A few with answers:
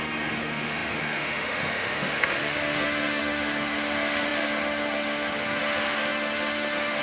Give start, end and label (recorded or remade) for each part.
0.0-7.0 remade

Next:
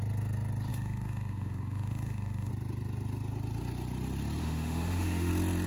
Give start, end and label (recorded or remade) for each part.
0.0-0.7 recorded; 0.7-2.5 remade; 2.5-4.4 recorded; 4.4-5.3 remade; 5.3-5.7 recorded

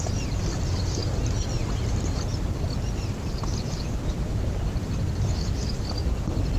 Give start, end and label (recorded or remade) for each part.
0.0-6.6 recorded